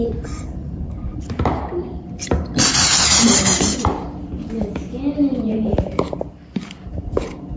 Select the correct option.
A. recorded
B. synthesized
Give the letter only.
B